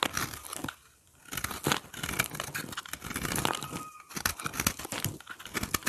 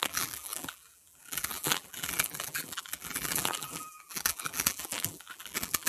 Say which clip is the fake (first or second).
second